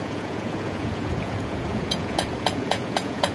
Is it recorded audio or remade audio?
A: remade